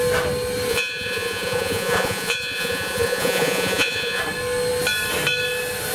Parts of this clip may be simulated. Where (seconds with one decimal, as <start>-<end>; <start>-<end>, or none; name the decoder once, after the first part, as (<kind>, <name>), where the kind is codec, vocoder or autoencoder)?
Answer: 0.7-4.2 (vocoder, Vocos)

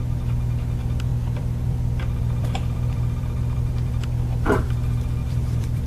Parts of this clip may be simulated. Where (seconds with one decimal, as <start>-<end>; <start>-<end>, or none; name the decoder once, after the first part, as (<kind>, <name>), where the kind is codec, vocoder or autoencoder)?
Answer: 1.1-3.9 (vocoder, BigVGAN v2); 5.2-5.9

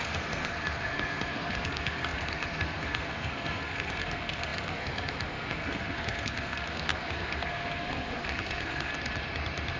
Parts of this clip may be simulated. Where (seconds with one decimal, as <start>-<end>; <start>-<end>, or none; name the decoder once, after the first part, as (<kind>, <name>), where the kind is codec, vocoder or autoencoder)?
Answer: 0.0-8.9 (codec, SNAC)